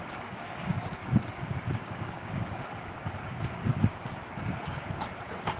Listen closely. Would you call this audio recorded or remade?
remade